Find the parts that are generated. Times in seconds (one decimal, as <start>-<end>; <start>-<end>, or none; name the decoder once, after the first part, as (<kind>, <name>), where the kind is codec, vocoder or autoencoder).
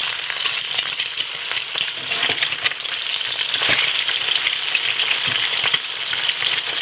0.0-6.8 (vocoder, BigVGAN v2)